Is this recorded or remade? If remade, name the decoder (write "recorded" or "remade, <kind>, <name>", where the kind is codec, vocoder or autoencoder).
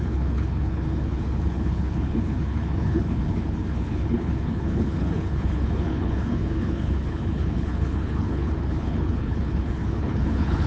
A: remade, codec, HILCodec